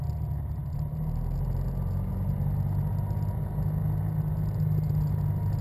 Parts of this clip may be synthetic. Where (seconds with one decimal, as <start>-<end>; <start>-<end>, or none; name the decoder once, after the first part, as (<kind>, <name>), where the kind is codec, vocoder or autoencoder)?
none